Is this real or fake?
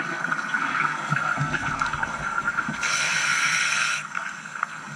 fake